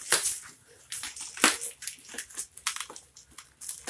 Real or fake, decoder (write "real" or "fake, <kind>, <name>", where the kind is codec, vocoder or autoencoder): real